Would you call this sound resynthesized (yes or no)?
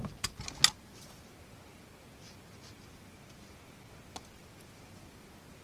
no